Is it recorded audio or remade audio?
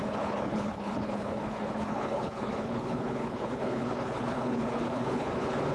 remade